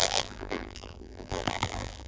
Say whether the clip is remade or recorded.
remade